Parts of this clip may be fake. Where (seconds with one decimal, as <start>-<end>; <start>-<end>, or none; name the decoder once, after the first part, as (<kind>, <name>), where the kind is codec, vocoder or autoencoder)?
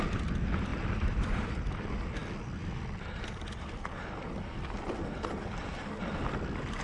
0.7-1.5 (vocoder, BigVGAN v2)